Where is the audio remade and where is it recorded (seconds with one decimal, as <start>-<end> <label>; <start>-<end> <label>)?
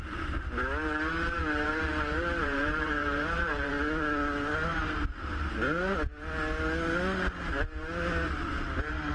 0.0-1.4 recorded; 1.4-3.7 remade; 3.7-9.1 recorded